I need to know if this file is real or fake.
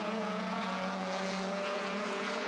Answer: fake